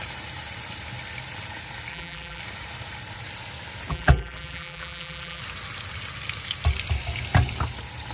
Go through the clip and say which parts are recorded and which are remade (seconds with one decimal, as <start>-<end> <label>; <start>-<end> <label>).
0.0-1.9 recorded; 1.9-2.4 remade; 2.4-3.9 recorded; 3.9-5.4 remade; 5.4-8.1 recorded